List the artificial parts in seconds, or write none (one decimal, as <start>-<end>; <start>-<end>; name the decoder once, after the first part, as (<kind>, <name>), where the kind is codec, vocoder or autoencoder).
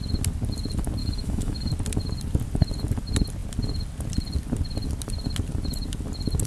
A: 1.0-1.7 (autoencoder, DAC-VAE)